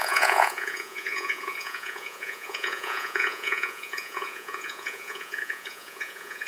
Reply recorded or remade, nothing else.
remade